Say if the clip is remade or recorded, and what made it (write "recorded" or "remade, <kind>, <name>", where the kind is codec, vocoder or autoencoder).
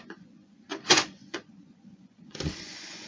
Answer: remade, vocoder, Vocos